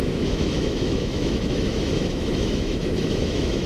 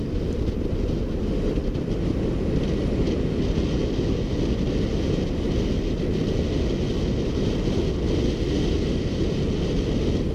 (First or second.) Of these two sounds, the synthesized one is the first